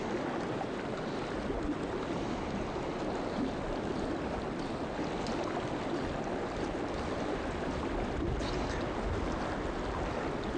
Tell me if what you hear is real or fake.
real